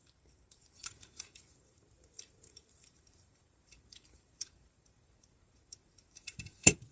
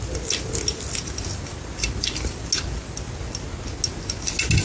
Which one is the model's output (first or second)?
first